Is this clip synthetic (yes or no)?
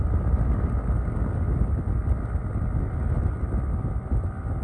no